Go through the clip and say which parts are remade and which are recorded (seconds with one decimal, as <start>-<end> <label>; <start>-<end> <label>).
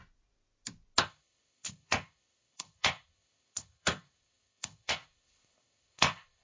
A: 0.0-1.0 recorded; 1.0-6.4 remade